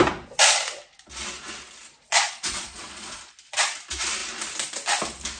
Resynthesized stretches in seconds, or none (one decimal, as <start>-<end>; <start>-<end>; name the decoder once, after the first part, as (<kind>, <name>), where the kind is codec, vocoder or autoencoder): 2.1-3.2 (vocoder, Vocos)